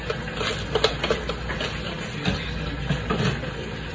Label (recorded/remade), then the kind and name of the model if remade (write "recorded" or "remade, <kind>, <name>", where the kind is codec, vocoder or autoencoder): recorded